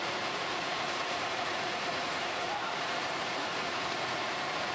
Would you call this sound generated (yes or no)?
yes